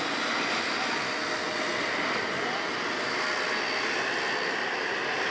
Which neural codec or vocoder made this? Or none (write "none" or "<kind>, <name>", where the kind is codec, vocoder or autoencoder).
none